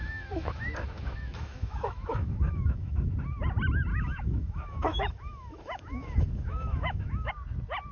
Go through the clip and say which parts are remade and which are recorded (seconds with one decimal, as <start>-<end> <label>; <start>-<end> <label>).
0.0-3.1 remade; 3.1-3.9 recorded; 3.9-7.3 remade; 7.3-7.9 recorded